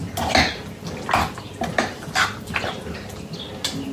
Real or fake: real